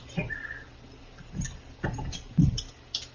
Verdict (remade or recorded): recorded